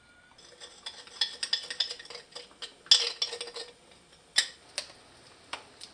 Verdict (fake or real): real